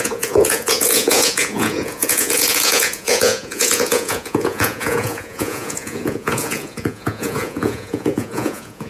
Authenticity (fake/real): fake